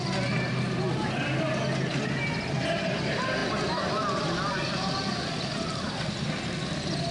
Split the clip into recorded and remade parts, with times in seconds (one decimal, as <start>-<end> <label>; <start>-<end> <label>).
0.0-7.1 recorded